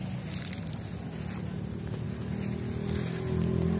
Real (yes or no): yes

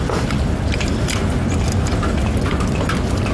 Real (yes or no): yes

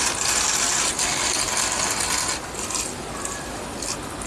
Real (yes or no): yes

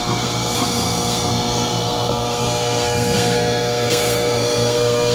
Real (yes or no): no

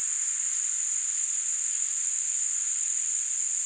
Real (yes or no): yes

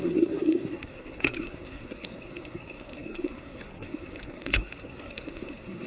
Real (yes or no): no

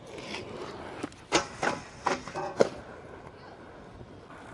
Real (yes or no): yes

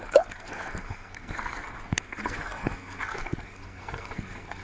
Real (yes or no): no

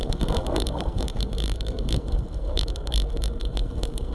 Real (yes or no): no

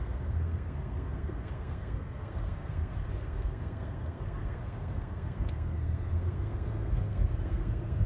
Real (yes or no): no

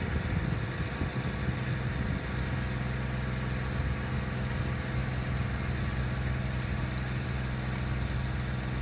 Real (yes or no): yes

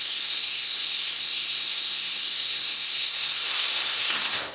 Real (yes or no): no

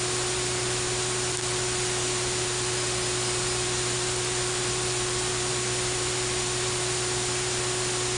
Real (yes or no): yes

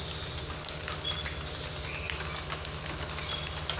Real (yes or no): yes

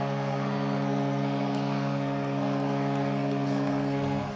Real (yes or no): no